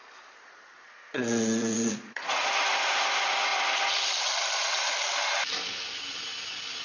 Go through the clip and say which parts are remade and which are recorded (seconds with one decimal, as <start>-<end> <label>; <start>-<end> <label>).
0.0-1.1 recorded; 1.1-2.5 remade; 2.5-6.8 recorded